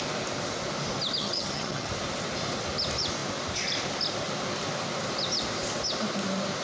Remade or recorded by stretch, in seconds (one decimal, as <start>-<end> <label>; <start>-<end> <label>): 0.0-1.2 recorded; 1.2-1.9 remade; 1.9-6.6 recorded